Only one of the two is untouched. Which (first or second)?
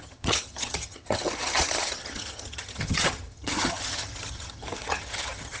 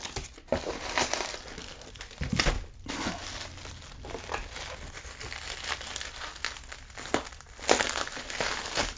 second